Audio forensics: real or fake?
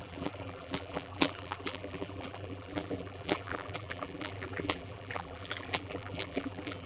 fake